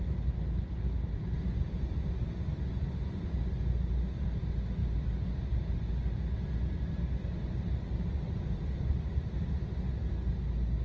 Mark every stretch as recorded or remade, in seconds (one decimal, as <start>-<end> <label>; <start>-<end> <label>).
0.0-10.8 recorded